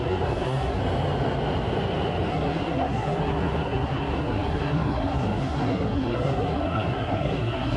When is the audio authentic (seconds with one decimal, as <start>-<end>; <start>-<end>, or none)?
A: 0.8-2.3